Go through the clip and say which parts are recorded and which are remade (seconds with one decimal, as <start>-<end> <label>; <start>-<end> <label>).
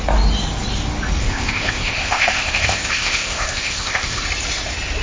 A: 0.0-1.2 recorded; 1.2-4.2 remade; 4.2-5.0 recorded